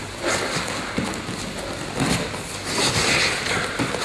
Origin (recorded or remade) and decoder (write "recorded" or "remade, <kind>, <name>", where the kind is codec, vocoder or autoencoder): recorded